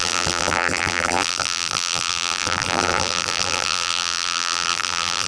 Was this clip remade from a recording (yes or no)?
yes